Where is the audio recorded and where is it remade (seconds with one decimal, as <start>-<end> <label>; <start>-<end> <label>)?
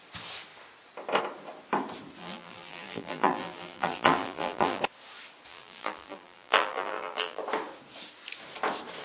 0.0-2.2 recorded; 2.2-4.8 remade; 4.8-5.5 recorded; 5.5-7.4 remade; 7.4-9.0 recorded